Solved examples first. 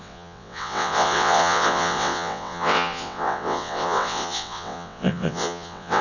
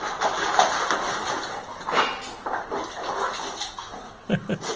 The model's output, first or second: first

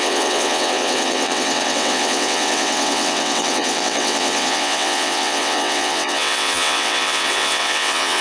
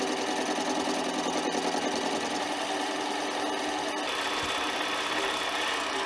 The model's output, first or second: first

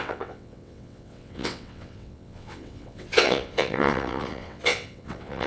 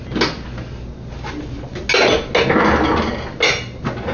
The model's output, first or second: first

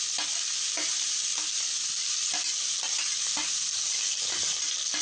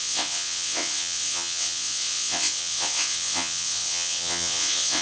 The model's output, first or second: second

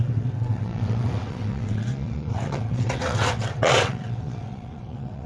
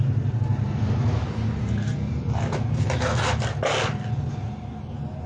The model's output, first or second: first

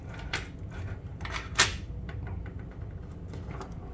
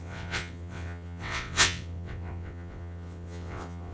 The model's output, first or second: second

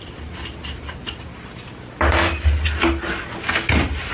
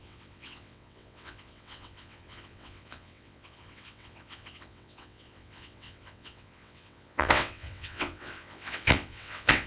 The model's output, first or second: second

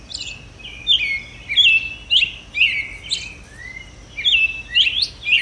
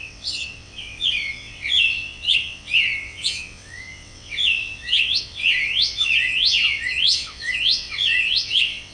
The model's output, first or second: second